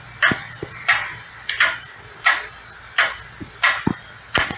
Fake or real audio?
real